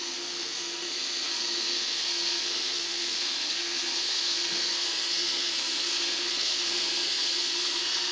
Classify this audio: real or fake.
fake